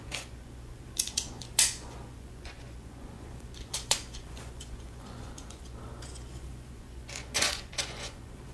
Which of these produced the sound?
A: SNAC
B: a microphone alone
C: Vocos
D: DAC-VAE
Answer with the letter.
C